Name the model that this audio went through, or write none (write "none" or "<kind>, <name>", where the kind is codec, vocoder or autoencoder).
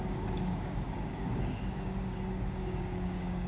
codec, DAC